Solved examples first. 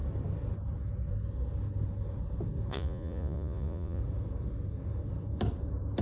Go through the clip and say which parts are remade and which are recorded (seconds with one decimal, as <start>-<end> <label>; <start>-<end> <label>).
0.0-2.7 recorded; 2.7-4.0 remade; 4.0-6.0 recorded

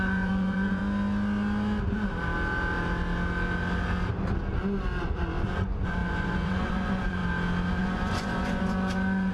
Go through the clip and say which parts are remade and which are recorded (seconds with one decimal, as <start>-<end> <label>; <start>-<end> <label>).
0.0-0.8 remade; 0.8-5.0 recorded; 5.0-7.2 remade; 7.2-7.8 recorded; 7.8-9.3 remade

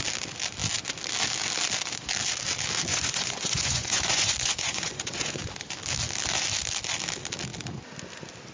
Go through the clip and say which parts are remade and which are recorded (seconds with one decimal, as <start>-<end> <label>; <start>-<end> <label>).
0.0-2.9 recorded; 2.9-5.4 remade; 5.4-8.5 recorded